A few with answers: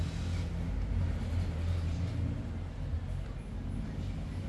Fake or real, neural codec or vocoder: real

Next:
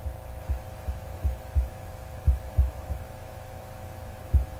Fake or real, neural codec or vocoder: fake, autoencoder, DAC-VAE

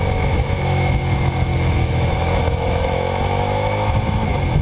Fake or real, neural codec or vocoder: fake, autoencoder, DAC-VAE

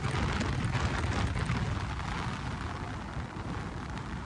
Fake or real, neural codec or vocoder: real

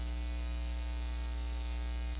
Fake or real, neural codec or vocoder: fake, autoencoder, DAC-VAE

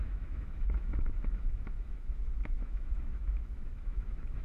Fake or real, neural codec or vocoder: fake, autoencoder, DAC-VAE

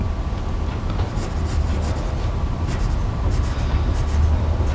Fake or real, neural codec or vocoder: real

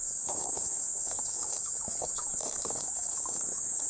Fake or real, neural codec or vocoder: fake, autoencoder, DAC-VAE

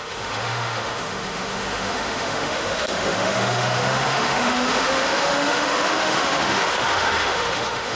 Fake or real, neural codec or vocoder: fake, autoencoder, DAC-VAE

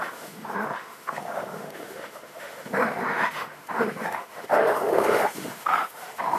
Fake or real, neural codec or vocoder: fake, autoencoder, DAC-VAE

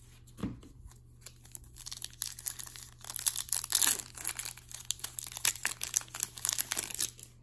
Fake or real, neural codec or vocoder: real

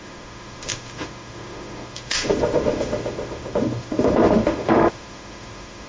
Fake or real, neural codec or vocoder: fake, autoencoder, DAC-VAE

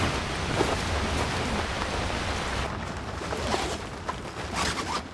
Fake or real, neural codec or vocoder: real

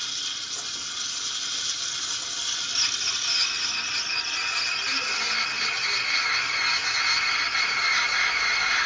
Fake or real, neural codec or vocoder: real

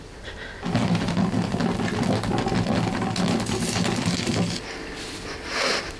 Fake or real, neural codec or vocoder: real